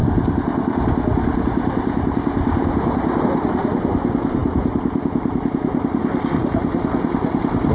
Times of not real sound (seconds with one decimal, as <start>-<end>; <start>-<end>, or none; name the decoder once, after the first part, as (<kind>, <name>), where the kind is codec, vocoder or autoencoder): none